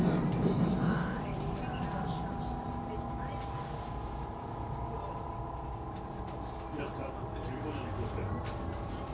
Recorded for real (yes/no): yes